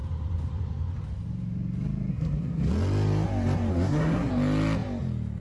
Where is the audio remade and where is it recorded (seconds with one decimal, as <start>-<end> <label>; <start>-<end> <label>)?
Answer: 0.0-2.1 recorded; 2.1-2.7 remade; 2.7-3.7 recorded; 3.7-4.3 remade; 4.3-5.4 recorded